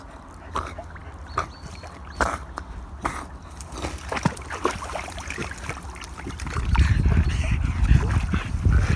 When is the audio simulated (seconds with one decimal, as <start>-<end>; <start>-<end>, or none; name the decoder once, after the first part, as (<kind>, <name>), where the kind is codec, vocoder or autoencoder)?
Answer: none